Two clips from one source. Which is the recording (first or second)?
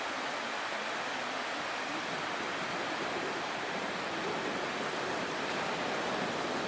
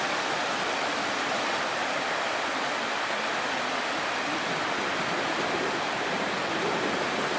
first